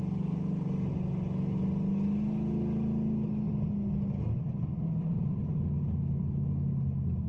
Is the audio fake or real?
real